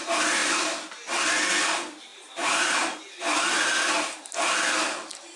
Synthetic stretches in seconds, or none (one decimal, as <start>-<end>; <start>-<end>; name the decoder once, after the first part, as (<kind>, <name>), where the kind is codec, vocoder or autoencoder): 0.4-0.9 (vocoder, BigVGAN v2); 2.1-3.0